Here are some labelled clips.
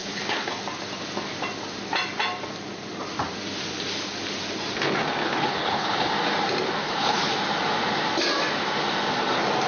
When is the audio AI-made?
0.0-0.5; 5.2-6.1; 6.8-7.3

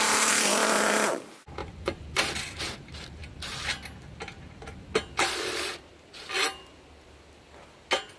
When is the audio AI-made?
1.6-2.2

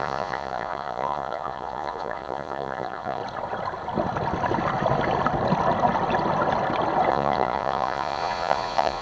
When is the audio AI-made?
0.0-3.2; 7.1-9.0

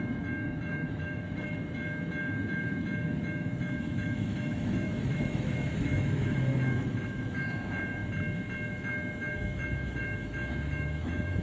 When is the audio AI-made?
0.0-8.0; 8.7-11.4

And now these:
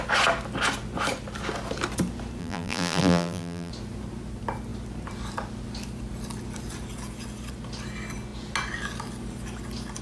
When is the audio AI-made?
2.4-3.7